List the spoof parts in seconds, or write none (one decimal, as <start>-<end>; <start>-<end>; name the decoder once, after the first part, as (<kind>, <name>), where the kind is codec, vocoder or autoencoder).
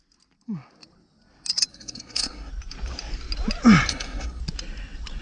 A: 1.7-2.5 (codec, SNAC); 3.9-4.4